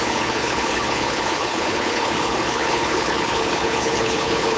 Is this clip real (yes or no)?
no